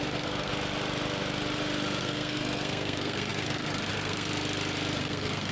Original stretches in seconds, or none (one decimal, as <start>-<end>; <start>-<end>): 0.5-2.0; 4.3-5.0